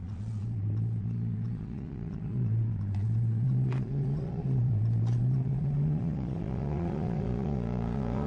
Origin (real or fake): fake